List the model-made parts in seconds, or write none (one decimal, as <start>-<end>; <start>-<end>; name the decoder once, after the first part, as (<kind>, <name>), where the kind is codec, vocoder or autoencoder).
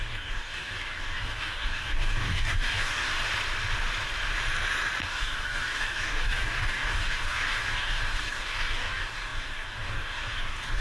0.0-3.1 (codec, DAC); 5.0-10.8